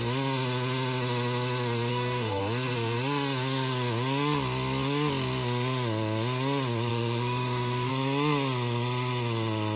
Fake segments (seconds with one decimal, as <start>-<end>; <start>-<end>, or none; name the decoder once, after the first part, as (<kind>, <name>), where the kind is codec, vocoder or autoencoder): 1.9-2.4 (autoencoder, DAC-VAE); 6.9-7.9

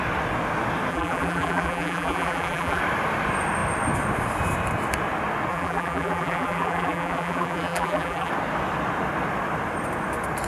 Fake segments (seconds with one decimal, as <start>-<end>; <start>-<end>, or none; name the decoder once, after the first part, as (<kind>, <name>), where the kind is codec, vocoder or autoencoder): 0.9-2.8 (vocoder, BigVGAN v2); 5.5-8.3